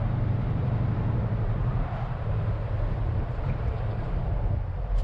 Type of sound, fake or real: fake